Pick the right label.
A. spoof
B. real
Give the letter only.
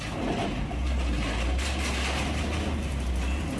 B